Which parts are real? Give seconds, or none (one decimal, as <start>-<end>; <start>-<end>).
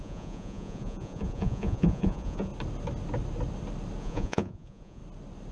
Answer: 2.5-4.0; 5.0-5.5